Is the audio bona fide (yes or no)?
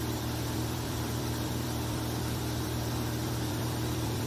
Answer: no